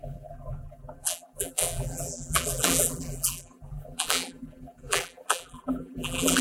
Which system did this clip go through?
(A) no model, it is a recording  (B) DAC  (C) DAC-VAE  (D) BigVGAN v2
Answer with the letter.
D